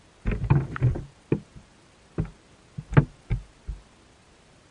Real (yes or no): yes